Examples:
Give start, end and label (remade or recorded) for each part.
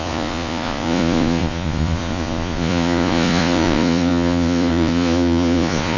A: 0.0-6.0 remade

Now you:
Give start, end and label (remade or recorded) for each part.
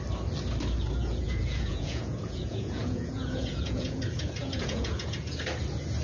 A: 0.0-1.0 recorded; 1.0-4.0 remade; 4.0-4.4 recorded; 4.4-5.4 remade; 5.4-6.0 recorded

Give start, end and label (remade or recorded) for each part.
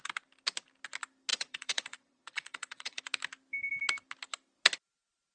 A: 0.0-1.3 recorded; 1.3-3.0 remade; 3.0-5.3 recorded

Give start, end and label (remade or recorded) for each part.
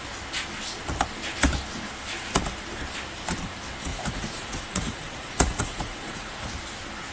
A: 0.0-3.9 recorded; 3.9-6.5 remade; 6.5-7.1 recorded